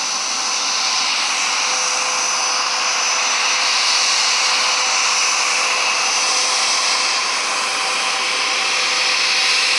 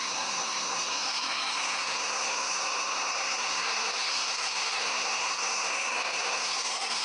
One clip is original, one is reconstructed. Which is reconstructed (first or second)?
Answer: second